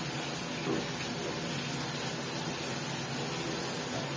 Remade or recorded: recorded